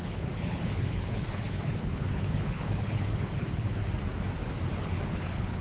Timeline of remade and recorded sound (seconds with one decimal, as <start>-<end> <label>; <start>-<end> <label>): 0.0-3.8 remade; 3.8-4.8 recorded; 4.8-5.6 remade